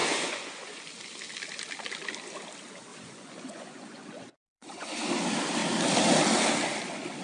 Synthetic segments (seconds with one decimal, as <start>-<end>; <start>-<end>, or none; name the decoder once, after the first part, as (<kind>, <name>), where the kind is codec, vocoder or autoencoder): 0.0-0.8 (vocoder, Vocos); 2.9-5.1